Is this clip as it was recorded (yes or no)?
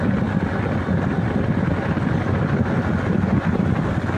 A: yes